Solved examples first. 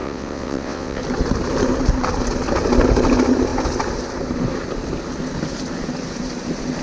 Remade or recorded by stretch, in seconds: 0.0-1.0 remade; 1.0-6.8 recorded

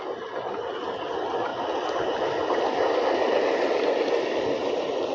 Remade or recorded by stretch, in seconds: 0.0-5.1 recorded

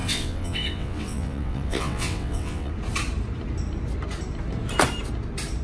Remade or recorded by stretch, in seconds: 0.0-2.7 remade; 2.7-5.6 recorded

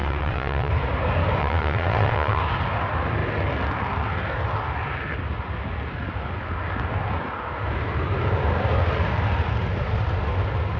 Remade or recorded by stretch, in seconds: 0.0-0.7 remade; 0.7-1.4 recorded; 1.4-2.4 remade; 2.4-10.8 recorded

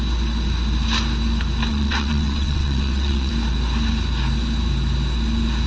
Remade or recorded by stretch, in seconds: 0.0-1.7 recorded; 1.7-3.3 remade; 3.3-5.7 recorded

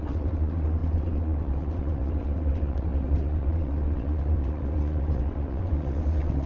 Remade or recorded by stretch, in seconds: 0.0-6.5 remade

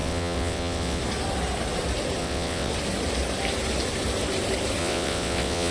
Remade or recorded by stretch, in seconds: 0.0-1.0 remade; 1.0-2.2 recorded; 2.2-2.7 remade; 2.7-4.8 recorded; 4.8-5.7 remade

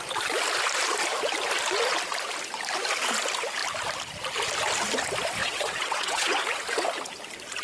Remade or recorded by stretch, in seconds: 0.0-5.4 recorded; 5.4-6.4 remade; 6.4-7.6 recorded